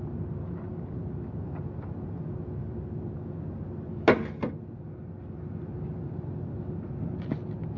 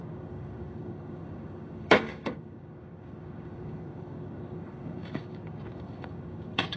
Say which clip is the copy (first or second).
second